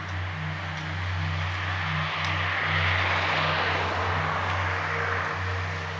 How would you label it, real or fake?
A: real